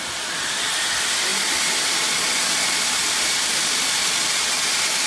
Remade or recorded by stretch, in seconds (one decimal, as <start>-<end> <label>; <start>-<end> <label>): 0.0-5.1 recorded